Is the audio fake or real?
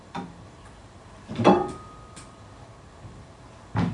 real